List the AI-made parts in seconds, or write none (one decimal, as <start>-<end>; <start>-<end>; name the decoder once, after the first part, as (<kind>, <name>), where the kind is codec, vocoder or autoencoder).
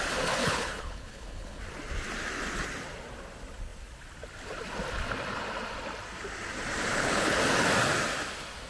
0.4-1.6 (codec, HILCodec); 6.9-7.4